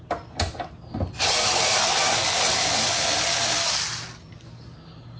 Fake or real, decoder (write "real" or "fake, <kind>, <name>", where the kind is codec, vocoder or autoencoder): real